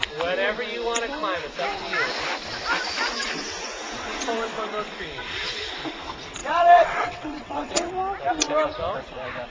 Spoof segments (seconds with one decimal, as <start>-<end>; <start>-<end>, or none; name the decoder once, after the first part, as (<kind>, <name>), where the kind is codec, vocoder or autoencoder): 6.4-7.9 (vocoder, WaveNeXt)